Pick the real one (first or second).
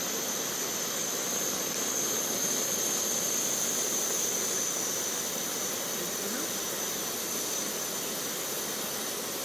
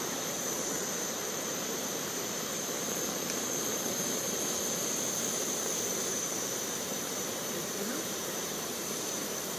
first